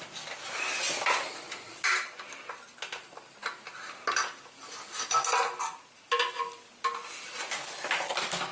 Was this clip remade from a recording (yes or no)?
no